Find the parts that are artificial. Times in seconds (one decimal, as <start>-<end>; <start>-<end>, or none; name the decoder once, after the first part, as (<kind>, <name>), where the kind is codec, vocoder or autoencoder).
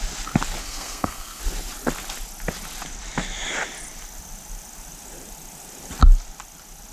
0.6-1.4 (codec, SNAC)